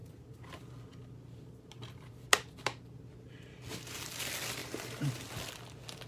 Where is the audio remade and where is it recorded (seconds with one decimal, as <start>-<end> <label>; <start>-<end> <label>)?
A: 0.0-4.6 recorded; 4.6-5.1 remade; 5.1-6.1 recorded